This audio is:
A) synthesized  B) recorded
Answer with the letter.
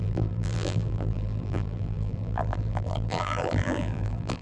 A